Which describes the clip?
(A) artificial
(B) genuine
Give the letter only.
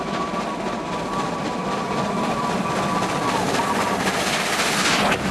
B